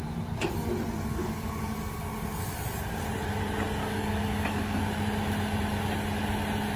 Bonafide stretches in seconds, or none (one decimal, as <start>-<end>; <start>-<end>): 0.0-1.2; 2.1-3.8; 4.8-6.8